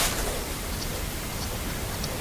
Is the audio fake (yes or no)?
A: yes